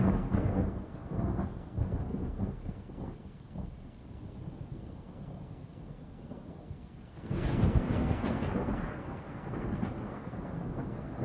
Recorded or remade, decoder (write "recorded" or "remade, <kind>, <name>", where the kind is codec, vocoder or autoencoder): remade, codec, SNAC